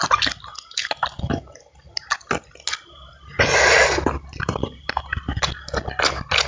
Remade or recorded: recorded